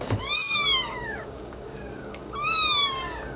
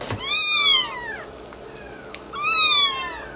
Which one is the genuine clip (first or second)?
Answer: second